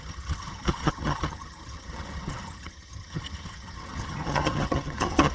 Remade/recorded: remade